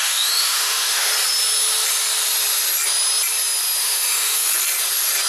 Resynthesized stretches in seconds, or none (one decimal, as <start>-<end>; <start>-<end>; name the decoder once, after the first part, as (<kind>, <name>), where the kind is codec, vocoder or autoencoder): 0.0-1.1 (autoencoder, DAC-VAE); 3.8-4.5